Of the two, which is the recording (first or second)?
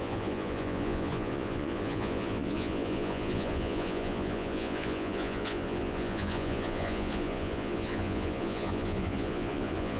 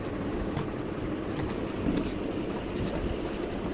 second